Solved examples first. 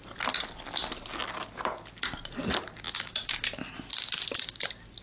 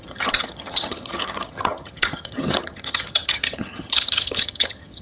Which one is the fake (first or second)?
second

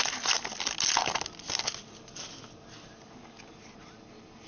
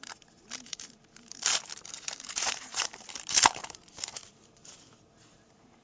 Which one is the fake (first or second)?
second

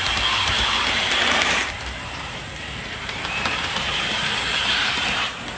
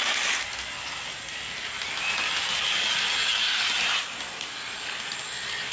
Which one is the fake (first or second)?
first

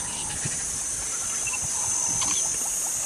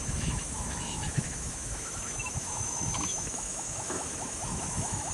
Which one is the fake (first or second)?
second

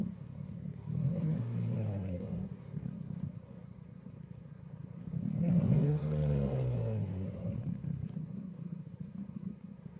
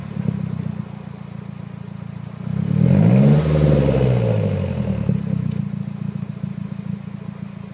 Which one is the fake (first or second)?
first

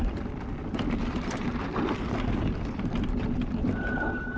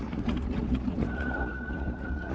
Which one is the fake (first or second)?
second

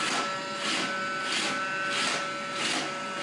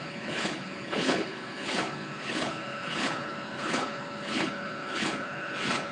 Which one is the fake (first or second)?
second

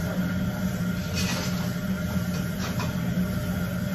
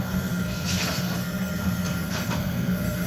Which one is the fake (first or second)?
second